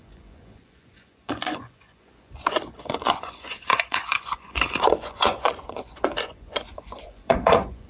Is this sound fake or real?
fake